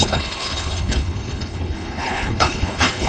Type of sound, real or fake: fake